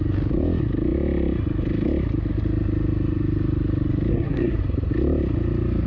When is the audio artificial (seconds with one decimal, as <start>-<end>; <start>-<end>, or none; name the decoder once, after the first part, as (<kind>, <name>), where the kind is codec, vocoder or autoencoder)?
4.1-4.6 (codec, SNAC)